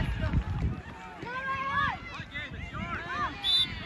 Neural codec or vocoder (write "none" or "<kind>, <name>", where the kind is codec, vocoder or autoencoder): none